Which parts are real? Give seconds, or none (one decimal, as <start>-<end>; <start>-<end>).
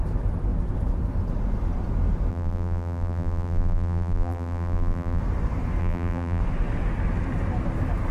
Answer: 0.0-2.3; 5.2-5.8; 6.4-8.1